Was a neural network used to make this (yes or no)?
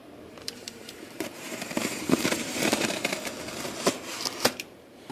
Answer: yes